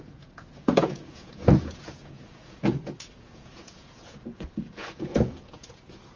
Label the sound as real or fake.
fake